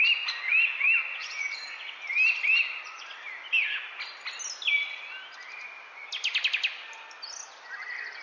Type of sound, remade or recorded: recorded